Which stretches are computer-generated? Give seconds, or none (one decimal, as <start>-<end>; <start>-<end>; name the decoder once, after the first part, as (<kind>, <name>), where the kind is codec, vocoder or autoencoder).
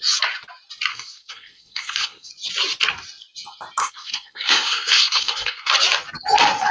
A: 0.9-2.3 (codec, SNAC); 3.8-5.7